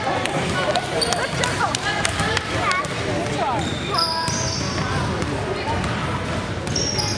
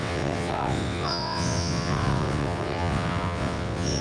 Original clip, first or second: first